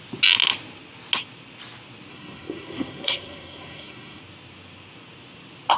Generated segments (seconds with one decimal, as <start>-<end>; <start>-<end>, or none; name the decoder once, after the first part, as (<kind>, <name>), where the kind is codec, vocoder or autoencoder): 2.1-4.2 (codec, SNAC)